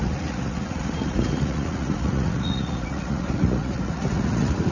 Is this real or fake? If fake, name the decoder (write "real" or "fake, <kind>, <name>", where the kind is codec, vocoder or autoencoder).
fake, vocoder, Vocos